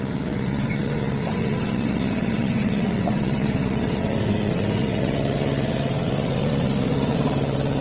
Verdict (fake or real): fake